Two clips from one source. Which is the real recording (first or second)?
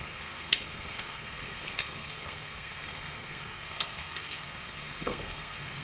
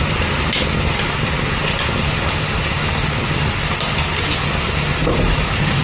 second